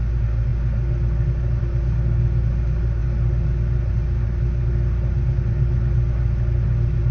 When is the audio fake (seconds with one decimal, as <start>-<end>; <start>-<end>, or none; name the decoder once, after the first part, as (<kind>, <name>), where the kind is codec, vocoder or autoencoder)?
none